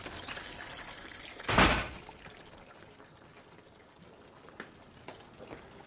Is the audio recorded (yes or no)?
yes